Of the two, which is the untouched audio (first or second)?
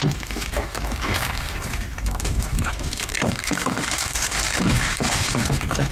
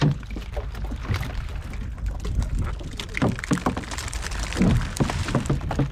second